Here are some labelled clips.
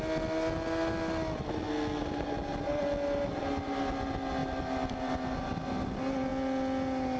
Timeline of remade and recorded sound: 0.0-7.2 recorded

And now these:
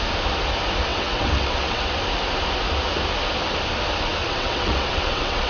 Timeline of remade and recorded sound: 0.0-0.9 recorded; 0.9-2.0 remade; 2.0-4.2 recorded; 4.2-5.5 remade

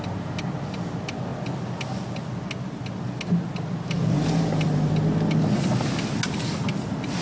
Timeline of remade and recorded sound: 0.0-7.2 recorded